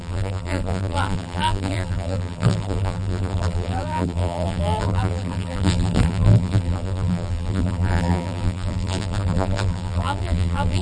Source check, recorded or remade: remade